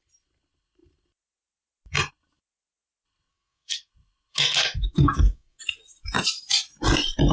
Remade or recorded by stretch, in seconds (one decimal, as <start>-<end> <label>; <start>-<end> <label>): 0.0-3.3 recorded; 3.3-3.9 remade; 3.9-4.3 recorded; 4.3-5.6 remade; 5.6-7.3 recorded